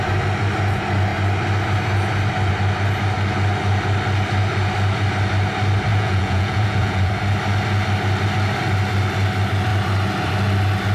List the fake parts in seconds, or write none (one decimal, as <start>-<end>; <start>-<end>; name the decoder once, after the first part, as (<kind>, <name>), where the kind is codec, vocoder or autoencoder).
5.9-7.1 (vocoder, Vocos)